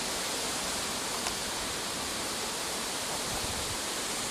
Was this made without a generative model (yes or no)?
yes